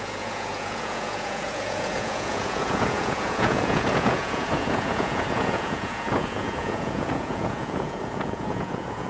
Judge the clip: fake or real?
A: fake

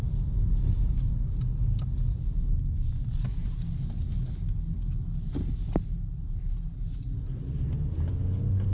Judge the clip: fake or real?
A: real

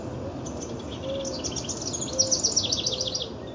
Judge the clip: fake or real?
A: real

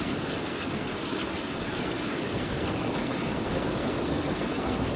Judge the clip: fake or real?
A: fake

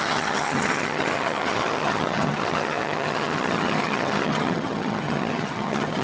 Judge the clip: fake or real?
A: fake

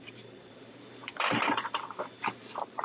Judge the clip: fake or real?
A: fake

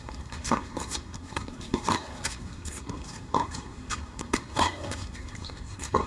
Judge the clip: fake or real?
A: fake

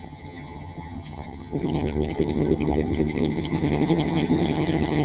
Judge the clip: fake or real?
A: fake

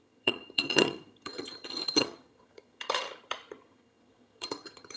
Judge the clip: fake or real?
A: fake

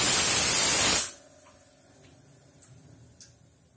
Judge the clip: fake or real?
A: real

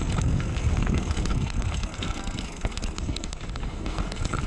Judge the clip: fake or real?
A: fake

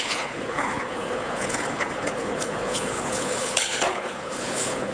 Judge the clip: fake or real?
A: fake